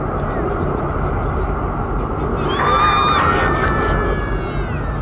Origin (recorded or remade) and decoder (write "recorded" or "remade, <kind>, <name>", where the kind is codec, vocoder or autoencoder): recorded